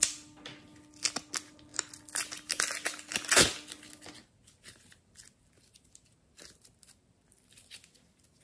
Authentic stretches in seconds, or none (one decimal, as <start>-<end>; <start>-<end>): 0.0-8.4